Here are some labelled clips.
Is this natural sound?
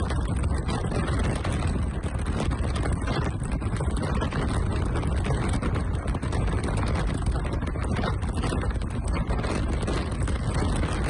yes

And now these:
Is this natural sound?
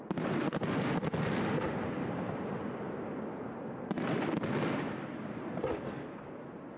yes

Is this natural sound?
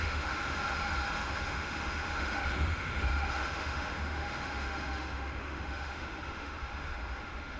no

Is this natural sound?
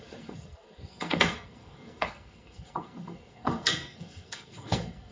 no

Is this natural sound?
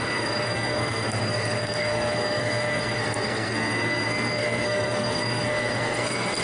no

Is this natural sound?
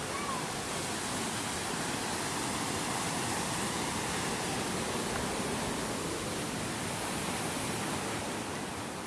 yes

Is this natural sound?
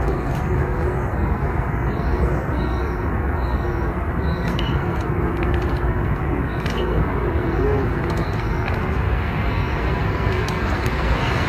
no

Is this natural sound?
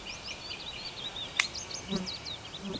yes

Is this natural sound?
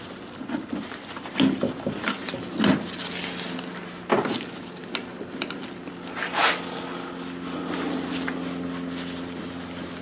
yes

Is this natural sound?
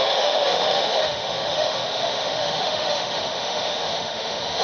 no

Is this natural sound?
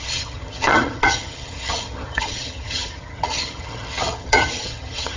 no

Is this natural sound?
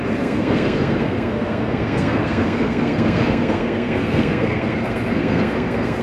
no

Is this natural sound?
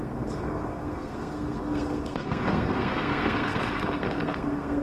no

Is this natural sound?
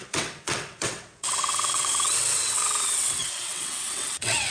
no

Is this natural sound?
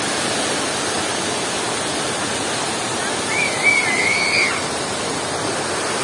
yes